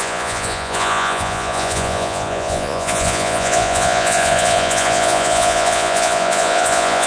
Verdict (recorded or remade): remade